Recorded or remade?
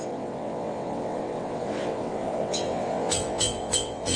remade